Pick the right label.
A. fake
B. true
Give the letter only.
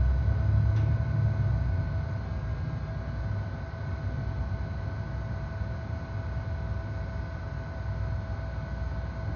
B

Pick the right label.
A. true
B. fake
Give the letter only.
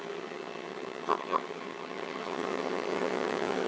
B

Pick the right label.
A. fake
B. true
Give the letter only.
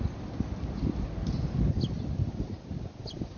B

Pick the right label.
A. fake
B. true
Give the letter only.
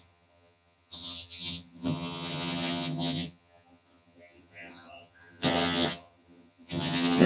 A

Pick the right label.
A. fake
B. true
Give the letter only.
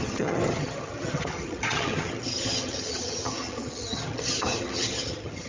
A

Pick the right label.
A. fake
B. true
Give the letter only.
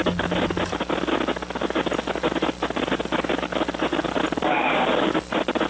B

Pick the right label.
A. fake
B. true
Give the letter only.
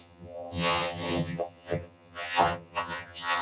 A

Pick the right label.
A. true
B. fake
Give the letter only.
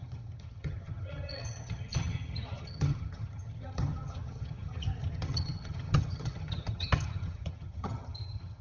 B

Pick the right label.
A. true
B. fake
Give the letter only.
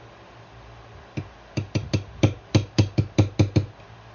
A